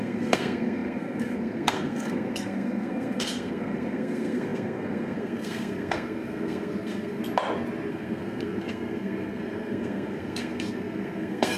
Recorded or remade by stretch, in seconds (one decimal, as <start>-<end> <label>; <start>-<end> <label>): 0.0-7.2 remade; 7.2-7.9 recorded; 7.9-11.6 remade